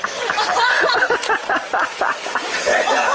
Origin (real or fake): real